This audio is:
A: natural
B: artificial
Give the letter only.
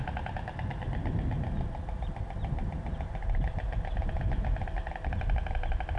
A